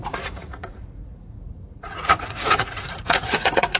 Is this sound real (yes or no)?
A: no